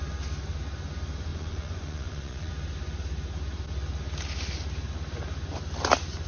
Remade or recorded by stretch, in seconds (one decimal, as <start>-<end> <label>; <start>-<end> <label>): 0.0-1.3 recorded; 1.3-2.5 remade; 2.5-6.3 recorded